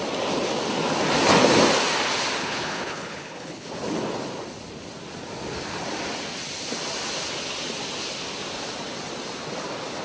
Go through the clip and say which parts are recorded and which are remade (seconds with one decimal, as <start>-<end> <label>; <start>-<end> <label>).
0.0-2.4 recorded; 2.4-3.7 remade; 3.7-10.0 recorded